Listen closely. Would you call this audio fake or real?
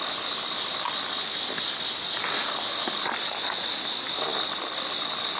real